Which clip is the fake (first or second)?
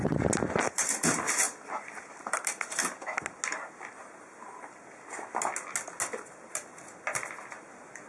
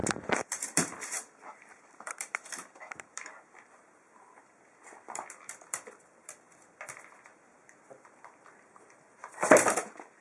second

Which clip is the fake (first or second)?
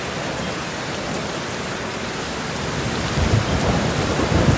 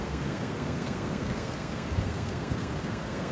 second